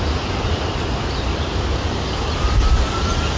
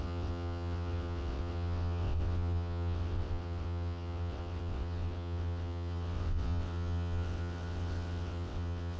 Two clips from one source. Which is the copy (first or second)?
second